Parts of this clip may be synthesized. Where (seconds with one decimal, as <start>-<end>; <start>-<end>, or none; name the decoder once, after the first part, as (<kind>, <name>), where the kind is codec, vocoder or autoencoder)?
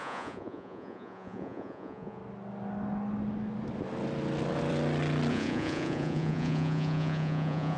0.0-2.2 (vocoder, Vocos); 5.3-7.8